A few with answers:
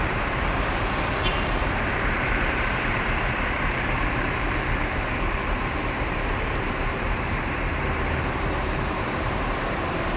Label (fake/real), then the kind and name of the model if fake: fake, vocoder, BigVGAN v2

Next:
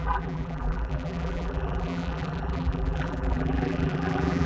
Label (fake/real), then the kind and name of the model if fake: fake, vocoder, BigVGAN v2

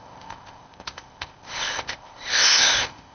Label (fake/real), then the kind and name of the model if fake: fake, codec, ZipCodec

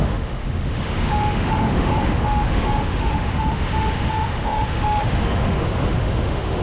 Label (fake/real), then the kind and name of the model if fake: fake, autoencoder, DAC-VAE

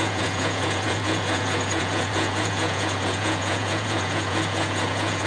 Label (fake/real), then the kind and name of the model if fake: fake, vocoder, Vocos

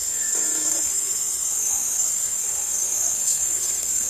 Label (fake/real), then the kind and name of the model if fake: fake, codec, SNAC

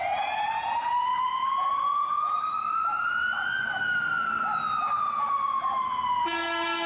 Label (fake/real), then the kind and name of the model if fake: real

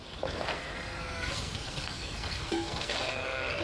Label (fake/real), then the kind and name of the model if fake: fake, codec, SNAC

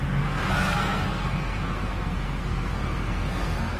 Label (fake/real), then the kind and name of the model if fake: fake, codec, SNAC